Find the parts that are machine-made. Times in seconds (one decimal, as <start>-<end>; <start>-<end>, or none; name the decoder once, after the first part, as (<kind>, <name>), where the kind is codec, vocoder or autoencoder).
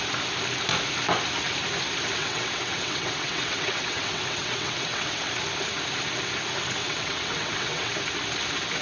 2.2-5.3 (vocoder, WaveNeXt); 6.8-8.0